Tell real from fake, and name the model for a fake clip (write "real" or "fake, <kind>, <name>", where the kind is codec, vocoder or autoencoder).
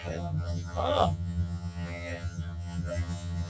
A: fake, vocoder, HiFi-GAN